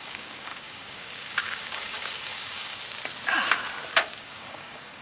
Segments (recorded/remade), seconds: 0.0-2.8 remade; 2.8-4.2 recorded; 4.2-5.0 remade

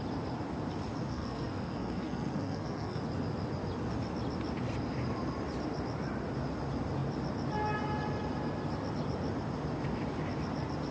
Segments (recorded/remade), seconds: 0.0-1.1 recorded; 1.1-3.0 remade; 3.0-10.9 recorded

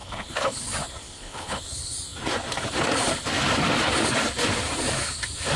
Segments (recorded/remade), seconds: 0.0-0.6 remade; 0.6-1.0 recorded; 1.0-1.6 remade; 1.6-5.6 recorded

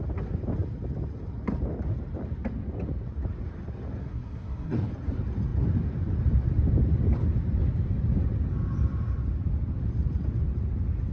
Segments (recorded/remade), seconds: 0.0-4.0 recorded; 4.0-4.9 remade; 4.9-11.1 recorded

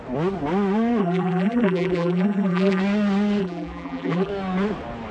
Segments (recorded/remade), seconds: 0.0-1.0 recorded; 1.0-2.8 remade; 2.8-3.4 recorded; 3.4-4.3 remade; 4.3-5.1 recorded

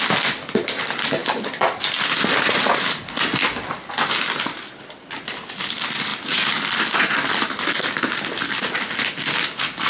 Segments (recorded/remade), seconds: 0.0-9.9 recorded

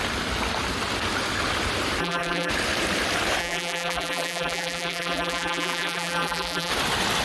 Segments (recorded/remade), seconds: 0.0-2.0 recorded; 2.0-2.5 remade; 2.5-3.4 recorded; 3.4-6.7 remade; 6.7-7.2 recorded

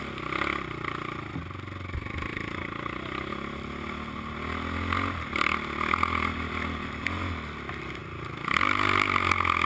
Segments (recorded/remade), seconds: 0.0-9.7 recorded